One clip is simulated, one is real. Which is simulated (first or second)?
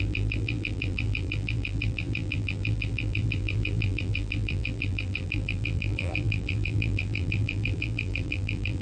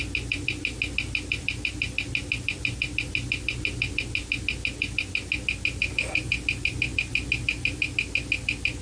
first